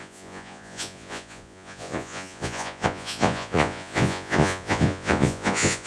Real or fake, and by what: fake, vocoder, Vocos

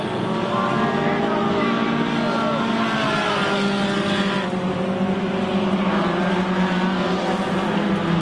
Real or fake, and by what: real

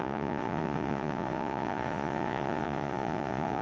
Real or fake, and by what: fake, vocoder, Vocos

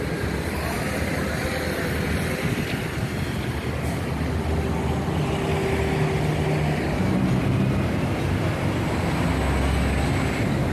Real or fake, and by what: real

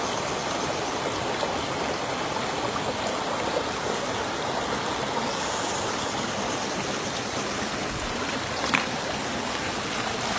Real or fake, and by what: fake, vocoder, BigVGAN v2